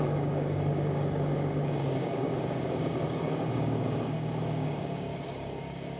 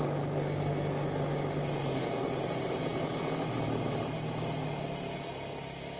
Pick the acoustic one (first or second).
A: second